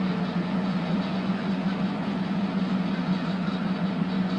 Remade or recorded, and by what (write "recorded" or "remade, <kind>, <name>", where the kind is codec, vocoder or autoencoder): remade, vocoder, Vocos